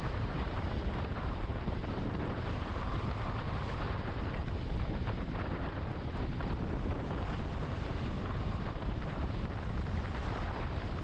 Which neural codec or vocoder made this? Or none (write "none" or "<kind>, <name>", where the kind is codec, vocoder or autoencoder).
vocoder, BigVGAN v2